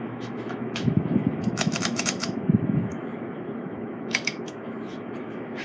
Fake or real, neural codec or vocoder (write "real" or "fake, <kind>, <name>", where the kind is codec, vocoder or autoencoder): fake, autoencoder, DAC-VAE